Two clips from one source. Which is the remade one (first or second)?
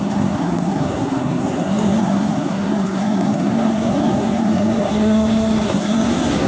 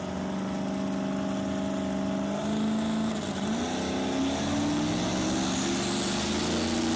first